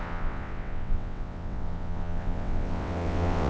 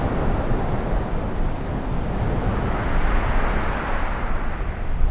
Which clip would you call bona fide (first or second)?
second